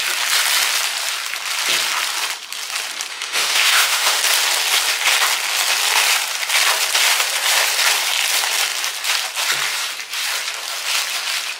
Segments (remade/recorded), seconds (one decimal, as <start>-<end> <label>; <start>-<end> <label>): 0.0-3.1 recorded; 3.1-4.2 remade; 4.2-11.6 recorded